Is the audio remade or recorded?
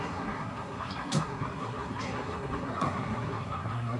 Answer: remade